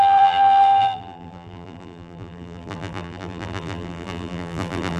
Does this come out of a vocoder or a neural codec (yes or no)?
yes